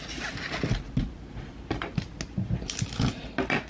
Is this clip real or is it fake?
real